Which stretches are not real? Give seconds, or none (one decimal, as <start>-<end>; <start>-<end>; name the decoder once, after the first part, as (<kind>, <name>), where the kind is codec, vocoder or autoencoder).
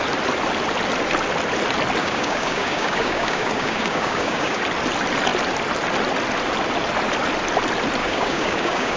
2.0-4.6 (codec, DAC); 8.0-9.0